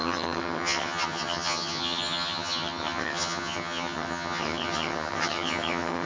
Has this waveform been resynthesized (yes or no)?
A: yes